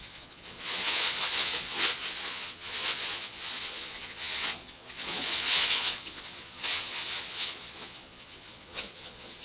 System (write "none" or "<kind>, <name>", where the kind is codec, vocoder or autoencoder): vocoder, Vocos